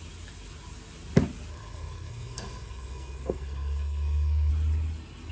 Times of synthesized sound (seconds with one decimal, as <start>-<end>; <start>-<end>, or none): 1.5-4.5